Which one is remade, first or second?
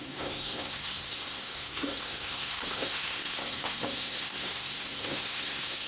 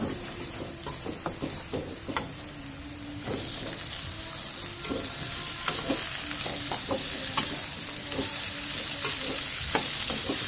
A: first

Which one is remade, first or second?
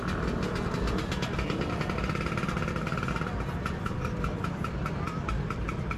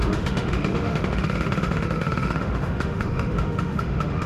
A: second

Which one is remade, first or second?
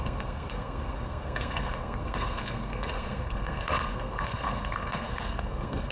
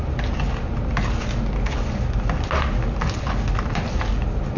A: first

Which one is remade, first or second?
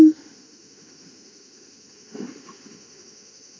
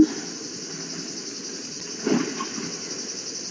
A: first